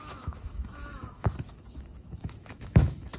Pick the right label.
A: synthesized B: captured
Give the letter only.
A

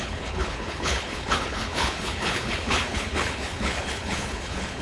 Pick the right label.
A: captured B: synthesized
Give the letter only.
B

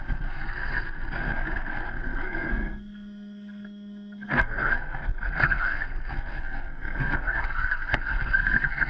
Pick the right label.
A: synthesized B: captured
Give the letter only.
A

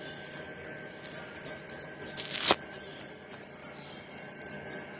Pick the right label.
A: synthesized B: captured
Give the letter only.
B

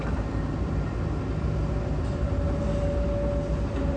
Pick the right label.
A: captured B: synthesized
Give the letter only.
A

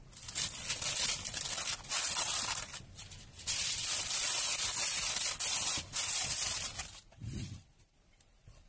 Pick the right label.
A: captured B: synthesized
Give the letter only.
A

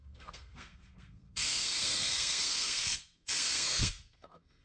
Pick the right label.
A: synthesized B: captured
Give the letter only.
A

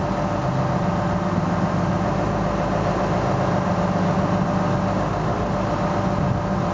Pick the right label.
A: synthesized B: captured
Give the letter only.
B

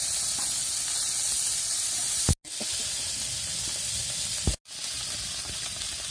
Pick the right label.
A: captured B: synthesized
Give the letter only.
A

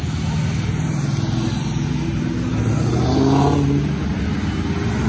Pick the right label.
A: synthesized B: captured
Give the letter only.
B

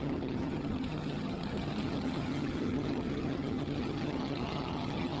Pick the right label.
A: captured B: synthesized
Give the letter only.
B